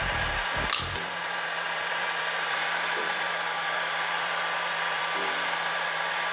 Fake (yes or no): yes